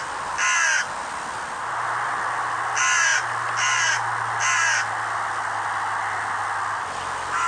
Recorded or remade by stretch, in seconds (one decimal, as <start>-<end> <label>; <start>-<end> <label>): 0.0-7.5 recorded